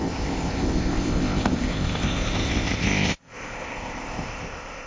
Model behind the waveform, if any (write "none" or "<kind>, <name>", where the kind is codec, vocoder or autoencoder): codec, ZipCodec